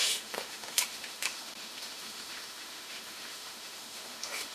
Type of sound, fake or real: fake